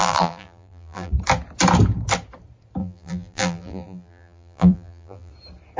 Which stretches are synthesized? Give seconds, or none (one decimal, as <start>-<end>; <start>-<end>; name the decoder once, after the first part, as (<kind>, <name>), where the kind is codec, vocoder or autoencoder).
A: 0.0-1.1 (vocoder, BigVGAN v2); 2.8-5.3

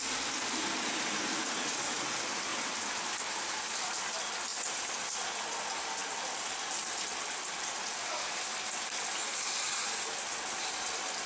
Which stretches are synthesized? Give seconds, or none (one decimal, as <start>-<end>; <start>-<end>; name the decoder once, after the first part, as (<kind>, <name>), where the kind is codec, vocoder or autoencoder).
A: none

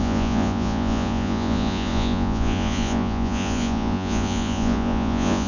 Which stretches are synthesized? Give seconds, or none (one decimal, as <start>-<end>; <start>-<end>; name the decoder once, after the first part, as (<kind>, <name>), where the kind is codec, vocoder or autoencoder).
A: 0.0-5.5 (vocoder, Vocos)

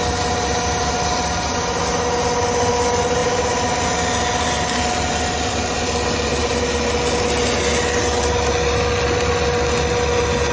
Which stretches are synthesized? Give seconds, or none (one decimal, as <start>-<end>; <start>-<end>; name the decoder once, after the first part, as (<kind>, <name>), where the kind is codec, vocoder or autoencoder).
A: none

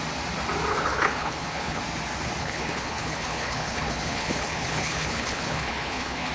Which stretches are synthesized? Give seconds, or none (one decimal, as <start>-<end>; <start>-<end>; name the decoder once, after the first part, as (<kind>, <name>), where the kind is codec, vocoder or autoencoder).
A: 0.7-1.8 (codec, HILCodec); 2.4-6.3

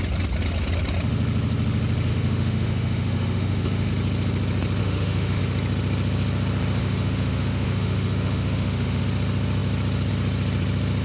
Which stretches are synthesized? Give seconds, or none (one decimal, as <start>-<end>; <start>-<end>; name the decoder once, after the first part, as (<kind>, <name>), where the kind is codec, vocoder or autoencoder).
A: 2.1-3.9 (autoencoder, DAC-VAE); 4.8-5.4; 6.8-9.0

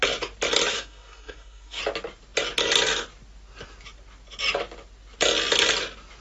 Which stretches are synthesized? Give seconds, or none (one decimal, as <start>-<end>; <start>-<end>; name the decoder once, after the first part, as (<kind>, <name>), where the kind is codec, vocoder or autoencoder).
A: 0.7-1.8 (codec, SNAC)

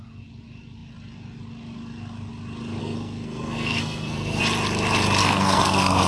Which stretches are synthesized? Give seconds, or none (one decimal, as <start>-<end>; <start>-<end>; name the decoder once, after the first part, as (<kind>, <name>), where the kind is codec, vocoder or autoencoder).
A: 2.8-4.4 (codec, SNAC); 5.2-6.1